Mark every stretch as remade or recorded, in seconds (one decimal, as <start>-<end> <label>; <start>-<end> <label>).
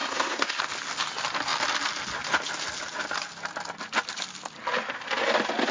0.0-0.6 remade; 0.6-5.7 recorded